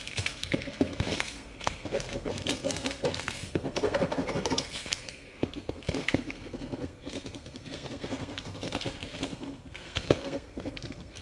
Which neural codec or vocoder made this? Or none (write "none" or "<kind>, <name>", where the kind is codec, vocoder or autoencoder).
codec, SNAC